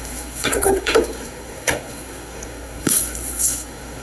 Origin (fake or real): fake